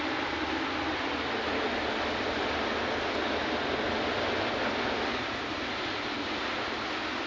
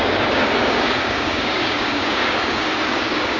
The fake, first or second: second